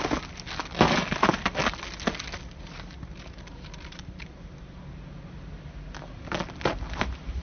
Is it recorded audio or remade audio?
recorded